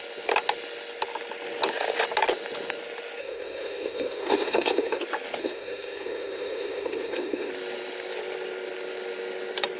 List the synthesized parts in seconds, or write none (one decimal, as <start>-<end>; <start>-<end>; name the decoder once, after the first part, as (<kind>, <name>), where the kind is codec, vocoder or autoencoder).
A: 3.2-5.0 (codec, SNAC); 5.4-7.5